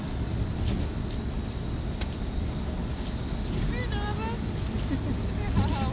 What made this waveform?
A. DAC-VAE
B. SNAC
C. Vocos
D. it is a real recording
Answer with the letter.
D